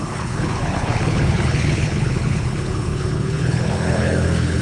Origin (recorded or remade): remade